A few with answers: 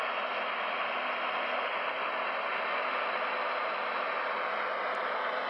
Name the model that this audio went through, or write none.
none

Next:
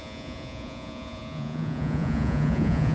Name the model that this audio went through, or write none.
vocoder, Vocos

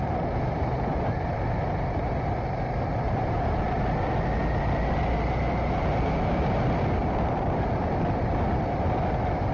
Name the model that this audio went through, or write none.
none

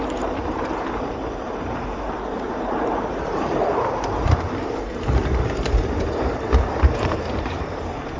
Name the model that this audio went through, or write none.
vocoder, BigVGAN v2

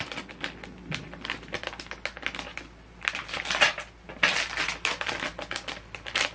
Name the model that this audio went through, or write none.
none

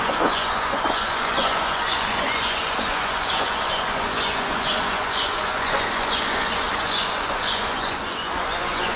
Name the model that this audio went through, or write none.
vocoder, Vocos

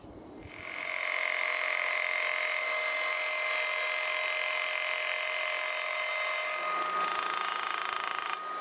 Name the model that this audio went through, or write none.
none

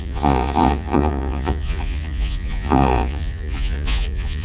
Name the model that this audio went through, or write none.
vocoder, Vocos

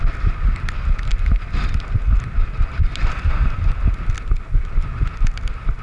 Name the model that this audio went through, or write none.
none